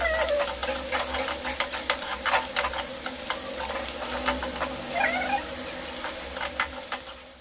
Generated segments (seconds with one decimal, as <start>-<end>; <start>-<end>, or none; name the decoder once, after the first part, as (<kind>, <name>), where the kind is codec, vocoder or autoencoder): none